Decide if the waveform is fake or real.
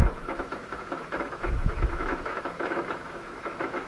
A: fake